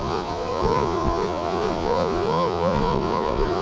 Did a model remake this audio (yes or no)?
yes